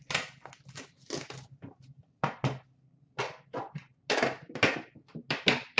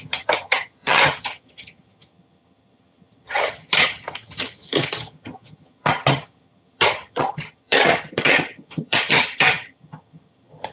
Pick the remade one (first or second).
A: second